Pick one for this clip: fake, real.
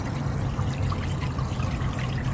real